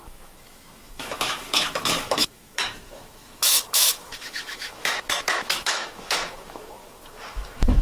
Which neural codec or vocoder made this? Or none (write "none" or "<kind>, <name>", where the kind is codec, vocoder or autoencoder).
autoencoder, DAC-VAE